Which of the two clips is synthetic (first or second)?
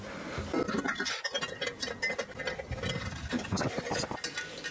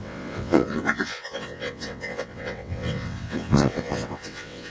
second